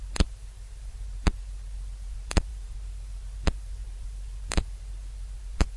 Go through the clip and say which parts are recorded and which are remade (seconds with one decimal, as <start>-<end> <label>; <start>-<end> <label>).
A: 0.0-5.8 remade